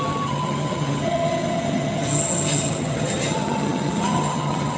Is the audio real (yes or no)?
no